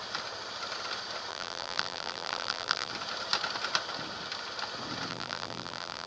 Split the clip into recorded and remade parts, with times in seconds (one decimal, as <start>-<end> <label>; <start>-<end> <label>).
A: 0.0-1.3 recorded; 1.3-2.9 remade; 2.9-5.1 recorded; 5.1-6.1 remade